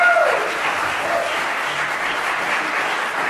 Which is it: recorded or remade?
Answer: recorded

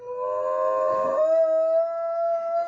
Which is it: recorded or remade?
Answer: recorded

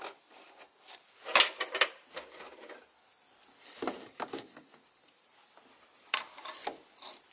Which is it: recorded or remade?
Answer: recorded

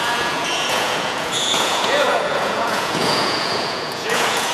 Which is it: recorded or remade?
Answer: remade